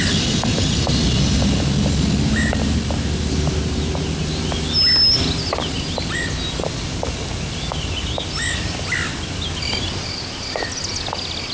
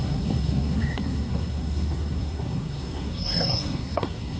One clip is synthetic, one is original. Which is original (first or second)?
first